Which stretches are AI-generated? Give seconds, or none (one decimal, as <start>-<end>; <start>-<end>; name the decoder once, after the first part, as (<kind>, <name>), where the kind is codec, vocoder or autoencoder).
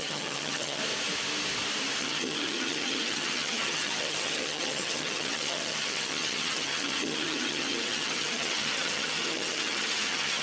0.0-0.8 (vocoder, HiFi-GAN); 2.0-10.4